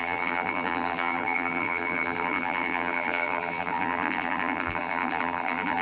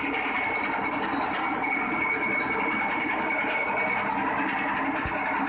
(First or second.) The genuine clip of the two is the second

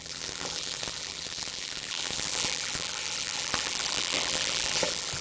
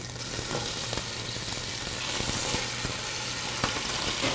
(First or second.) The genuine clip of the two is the second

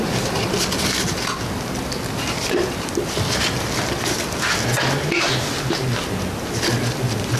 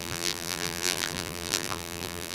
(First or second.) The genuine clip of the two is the first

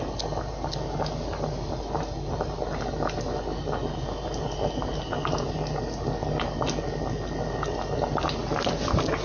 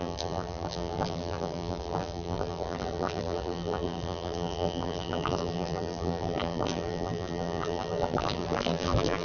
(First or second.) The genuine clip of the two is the first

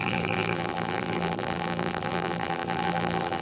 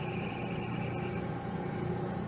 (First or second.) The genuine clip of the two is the second